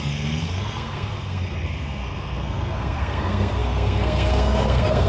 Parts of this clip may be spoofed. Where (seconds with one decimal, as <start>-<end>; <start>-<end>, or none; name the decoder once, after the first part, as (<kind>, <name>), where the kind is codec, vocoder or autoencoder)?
0.0-5.1 (codec, SNAC)